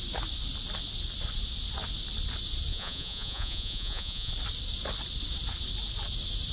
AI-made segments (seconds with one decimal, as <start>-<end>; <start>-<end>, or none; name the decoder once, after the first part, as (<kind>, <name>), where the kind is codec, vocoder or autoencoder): 2.7-4.3 (vocoder, Vocos)